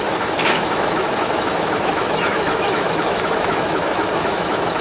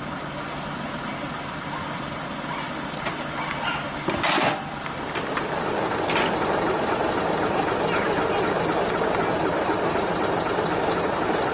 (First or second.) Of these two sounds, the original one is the second